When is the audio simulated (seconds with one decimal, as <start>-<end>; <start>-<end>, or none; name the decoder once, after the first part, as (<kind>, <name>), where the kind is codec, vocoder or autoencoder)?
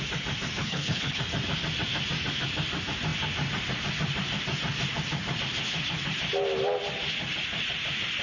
0.6-1.2 (codec, HILCodec)